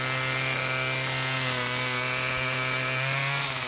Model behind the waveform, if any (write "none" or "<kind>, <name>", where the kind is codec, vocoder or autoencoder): none